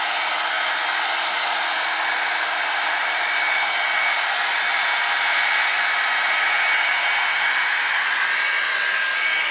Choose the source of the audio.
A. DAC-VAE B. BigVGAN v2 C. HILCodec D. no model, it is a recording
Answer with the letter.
B